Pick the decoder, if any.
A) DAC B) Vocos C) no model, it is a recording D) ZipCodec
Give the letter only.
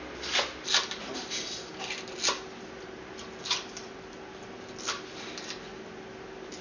C